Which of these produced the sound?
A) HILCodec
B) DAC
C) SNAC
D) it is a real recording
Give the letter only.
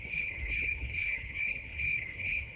A